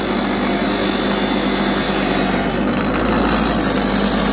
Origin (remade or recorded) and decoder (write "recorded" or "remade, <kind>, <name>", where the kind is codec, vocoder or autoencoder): recorded